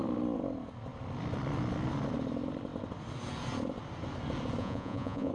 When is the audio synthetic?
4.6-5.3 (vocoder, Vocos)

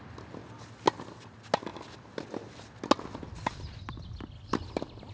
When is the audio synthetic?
none

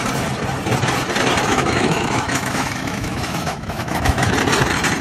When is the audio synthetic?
1.5-4.3 (autoencoder, DAC-VAE)

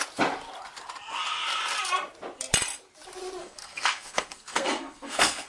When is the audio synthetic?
3.4-5.5 (codec, SNAC)

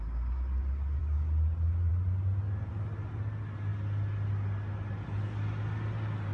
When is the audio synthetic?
none